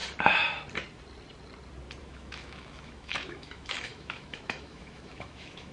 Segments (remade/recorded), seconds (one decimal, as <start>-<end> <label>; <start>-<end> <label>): 0.0-2.0 recorded; 2.0-5.7 remade